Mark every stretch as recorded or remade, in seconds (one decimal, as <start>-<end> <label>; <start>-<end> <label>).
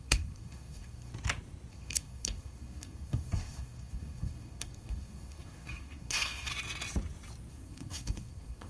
0.0-1.1 remade; 1.1-1.7 recorded; 1.7-6.5 remade; 6.5-7.5 recorded; 7.5-8.7 remade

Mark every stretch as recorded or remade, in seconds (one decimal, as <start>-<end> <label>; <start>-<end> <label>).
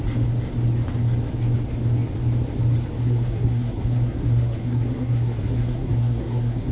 0.0-3.0 recorded; 3.0-6.7 remade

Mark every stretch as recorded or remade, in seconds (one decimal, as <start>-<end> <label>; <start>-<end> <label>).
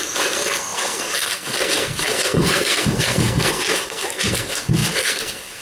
0.0-5.6 remade